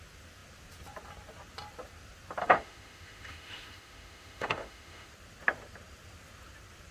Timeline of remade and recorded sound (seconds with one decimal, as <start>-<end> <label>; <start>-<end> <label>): 0.0-2.4 recorded; 2.4-5.1 remade; 5.1-6.9 recorded